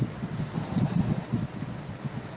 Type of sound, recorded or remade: remade